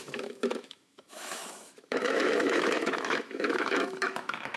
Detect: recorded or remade remade